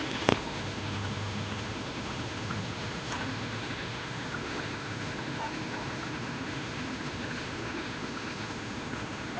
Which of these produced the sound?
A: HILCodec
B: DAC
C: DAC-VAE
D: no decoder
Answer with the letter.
C